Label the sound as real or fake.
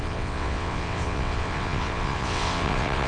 fake